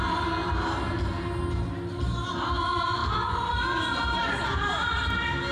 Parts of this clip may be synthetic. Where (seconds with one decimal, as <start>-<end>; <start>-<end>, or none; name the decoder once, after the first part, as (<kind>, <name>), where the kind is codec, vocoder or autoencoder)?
3.0-3.5 (vocoder, BigVGAN v2); 4.2-5.0